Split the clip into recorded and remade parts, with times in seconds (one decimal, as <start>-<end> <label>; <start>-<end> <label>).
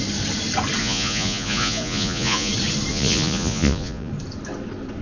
0.0-0.8 recorded; 0.8-2.5 remade; 2.5-2.9 recorded; 2.9-4.1 remade; 4.1-5.0 recorded